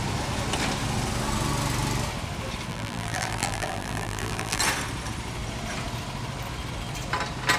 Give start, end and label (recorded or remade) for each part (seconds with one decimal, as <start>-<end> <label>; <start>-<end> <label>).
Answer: 0.0-2.7 recorded; 2.7-4.6 remade; 4.6-7.6 recorded